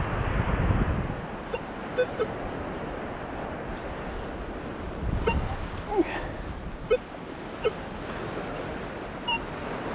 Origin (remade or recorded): recorded